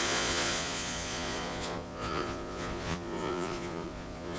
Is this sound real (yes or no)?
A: no